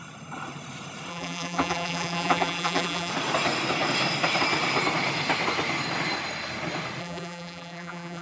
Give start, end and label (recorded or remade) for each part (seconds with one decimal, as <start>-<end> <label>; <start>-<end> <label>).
0.0-1.1 recorded; 1.1-3.1 remade; 3.1-7.0 recorded; 7.0-8.2 remade